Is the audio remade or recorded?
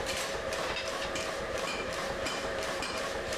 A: remade